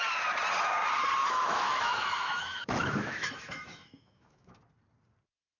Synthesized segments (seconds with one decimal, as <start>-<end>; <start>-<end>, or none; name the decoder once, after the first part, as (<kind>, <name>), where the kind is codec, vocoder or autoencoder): 1.2-4.6 (autoencoder, DAC-VAE)